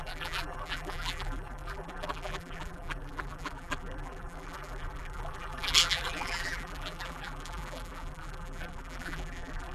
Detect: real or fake fake